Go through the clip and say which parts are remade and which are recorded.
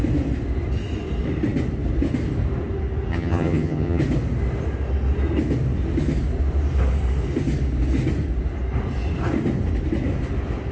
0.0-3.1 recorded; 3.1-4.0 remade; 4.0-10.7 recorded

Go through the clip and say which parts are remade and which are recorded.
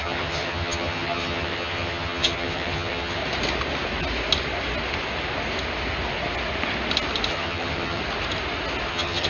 0.0-3.2 remade; 3.2-7.3 recorded; 7.3-8.0 remade; 8.0-8.9 recorded; 8.9-9.3 remade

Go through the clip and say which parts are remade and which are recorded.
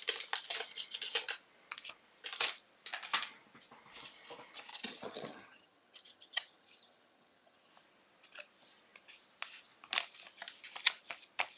0.0-4.7 recorded; 4.7-7.7 remade; 7.7-11.6 recorded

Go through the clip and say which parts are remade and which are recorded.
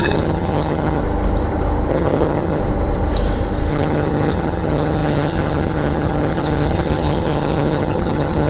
0.0-1.0 remade; 1.0-1.9 recorded; 1.9-2.6 remade; 2.6-3.7 recorded; 3.7-8.5 remade